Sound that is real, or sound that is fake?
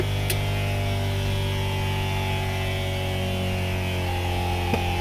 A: real